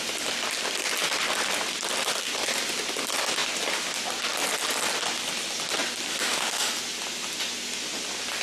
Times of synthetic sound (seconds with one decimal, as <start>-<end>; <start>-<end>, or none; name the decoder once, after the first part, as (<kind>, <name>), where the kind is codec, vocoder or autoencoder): 6.2-6.7 (autoencoder, DAC-VAE)